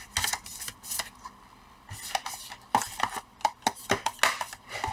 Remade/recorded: recorded